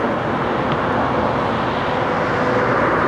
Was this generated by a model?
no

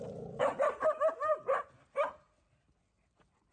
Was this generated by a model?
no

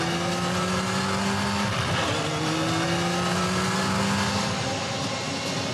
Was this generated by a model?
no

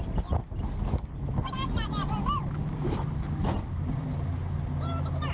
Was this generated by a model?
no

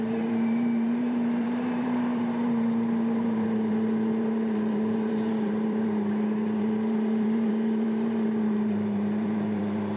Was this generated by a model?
yes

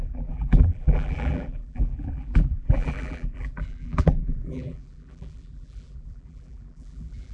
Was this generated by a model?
yes